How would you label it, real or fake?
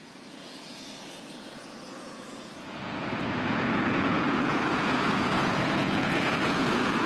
fake